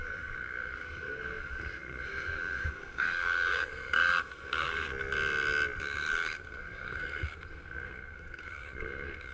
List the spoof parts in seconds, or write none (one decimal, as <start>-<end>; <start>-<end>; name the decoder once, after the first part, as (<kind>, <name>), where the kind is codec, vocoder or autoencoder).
0.0-4.9 (codec, SNAC); 5.8-9.3

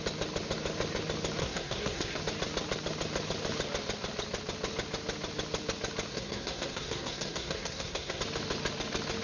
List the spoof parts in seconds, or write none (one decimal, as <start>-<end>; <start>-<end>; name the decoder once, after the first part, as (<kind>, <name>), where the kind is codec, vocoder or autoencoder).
1.4-2.2 (codec, SNAC); 6.1-8.2

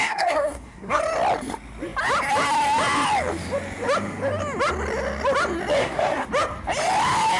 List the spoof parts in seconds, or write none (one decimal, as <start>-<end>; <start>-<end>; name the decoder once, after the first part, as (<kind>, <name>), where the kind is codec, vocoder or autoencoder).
0.0-1.0 (codec, SNAC); 5.8-6.3

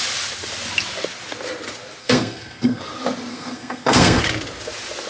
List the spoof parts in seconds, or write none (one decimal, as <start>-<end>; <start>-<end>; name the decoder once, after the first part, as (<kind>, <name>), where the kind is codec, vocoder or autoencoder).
2.0-2.8 (codec, SNAC); 3.3-4.2

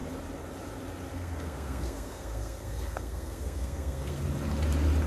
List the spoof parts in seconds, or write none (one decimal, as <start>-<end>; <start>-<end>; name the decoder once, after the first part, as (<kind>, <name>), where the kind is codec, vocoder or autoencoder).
1.1-4.2 (codec, SNAC)

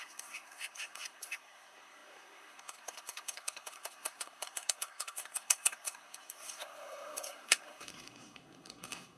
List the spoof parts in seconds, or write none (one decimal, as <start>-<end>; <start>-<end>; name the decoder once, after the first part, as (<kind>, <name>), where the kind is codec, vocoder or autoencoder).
0.0-9.2 (codec, SNAC)

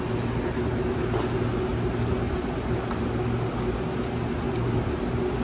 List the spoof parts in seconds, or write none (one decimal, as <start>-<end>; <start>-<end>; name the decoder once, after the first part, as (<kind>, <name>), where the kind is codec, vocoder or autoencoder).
none